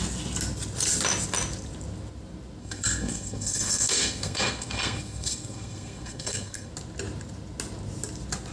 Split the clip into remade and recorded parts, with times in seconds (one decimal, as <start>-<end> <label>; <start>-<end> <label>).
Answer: 0.0-2.6 recorded; 2.6-6.7 remade; 6.7-8.5 recorded